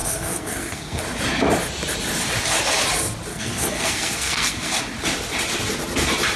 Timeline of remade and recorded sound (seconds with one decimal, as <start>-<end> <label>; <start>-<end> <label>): 0.0-1.0 remade; 1.0-3.3 recorded; 3.3-4.8 remade; 4.8-6.4 recorded